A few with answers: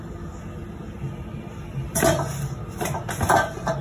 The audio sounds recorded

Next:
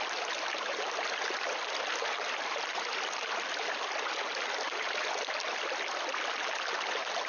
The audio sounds recorded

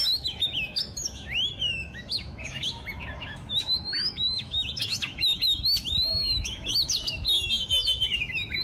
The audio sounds remade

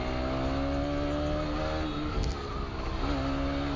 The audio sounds recorded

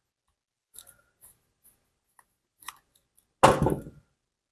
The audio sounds recorded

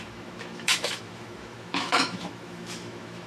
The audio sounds remade